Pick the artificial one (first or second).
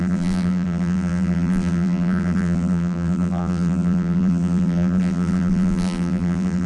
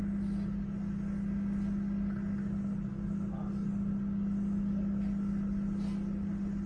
first